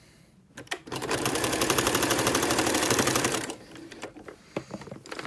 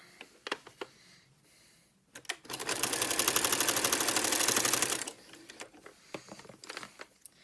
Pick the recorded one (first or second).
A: second